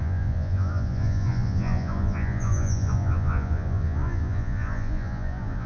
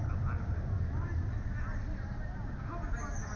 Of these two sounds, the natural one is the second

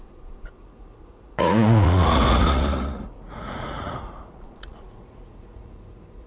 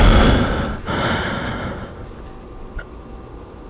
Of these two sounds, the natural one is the second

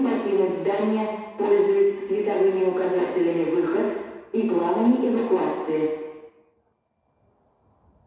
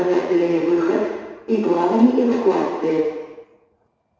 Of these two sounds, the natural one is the first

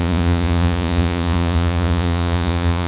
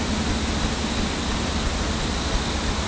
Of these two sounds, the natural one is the second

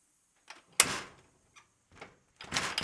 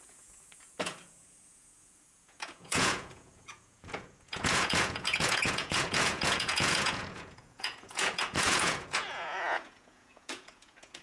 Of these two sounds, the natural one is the first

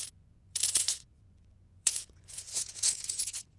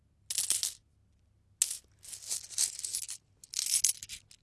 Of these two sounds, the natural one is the second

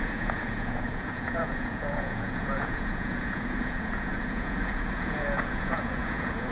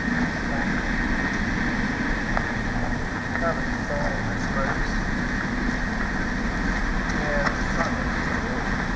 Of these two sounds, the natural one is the second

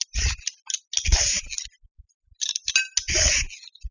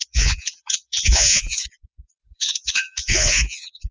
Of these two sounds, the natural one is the first